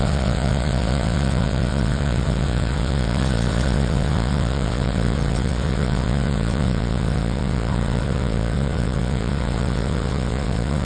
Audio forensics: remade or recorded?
remade